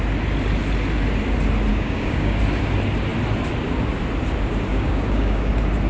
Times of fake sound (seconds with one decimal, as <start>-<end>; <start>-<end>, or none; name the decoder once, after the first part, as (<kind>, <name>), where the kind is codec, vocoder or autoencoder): 1.7-2.4 (codec, DAC); 4.7-5.5